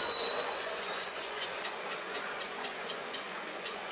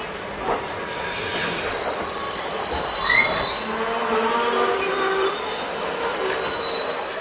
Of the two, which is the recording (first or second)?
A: second